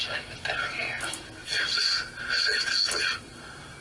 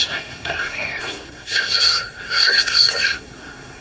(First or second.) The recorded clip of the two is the first